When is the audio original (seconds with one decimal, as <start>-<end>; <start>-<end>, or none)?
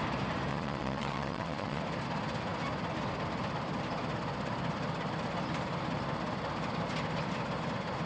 0.0-0.5; 1.8-8.1